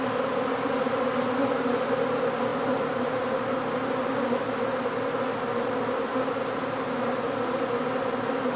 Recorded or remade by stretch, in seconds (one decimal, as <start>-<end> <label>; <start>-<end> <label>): 0.0-8.6 recorded